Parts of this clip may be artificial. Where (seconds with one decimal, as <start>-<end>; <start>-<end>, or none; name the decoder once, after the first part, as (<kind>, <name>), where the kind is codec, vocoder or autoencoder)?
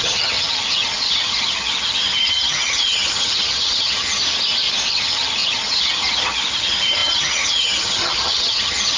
0.0-4.2 (vocoder, HiFi-GAN); 4.9-9.0